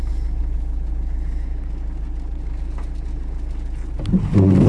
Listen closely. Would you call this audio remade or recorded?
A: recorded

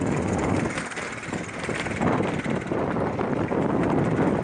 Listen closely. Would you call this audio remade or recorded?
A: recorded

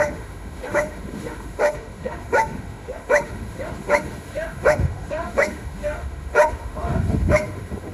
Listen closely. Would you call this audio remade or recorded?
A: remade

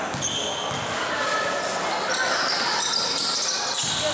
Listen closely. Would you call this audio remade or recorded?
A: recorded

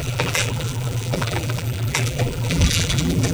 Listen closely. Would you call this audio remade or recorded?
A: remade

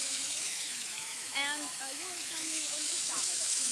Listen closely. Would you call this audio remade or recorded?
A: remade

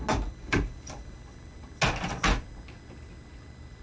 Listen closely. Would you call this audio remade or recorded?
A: recorded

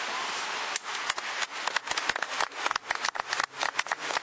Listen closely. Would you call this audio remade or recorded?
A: recorded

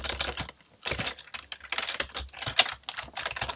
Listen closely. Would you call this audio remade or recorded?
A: recorded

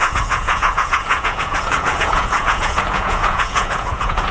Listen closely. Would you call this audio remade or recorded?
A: remade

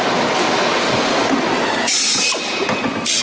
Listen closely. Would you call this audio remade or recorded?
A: recorded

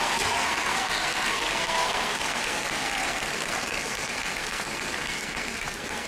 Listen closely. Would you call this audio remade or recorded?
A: remade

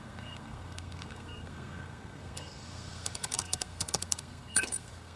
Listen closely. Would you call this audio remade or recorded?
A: remade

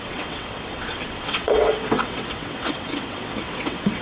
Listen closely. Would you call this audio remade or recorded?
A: remade